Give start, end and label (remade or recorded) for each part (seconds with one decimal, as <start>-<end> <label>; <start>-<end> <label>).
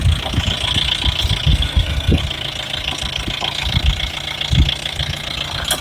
0.0-1.5 recorded; 1.5-2.2 remade; 2.2-5.8 recorded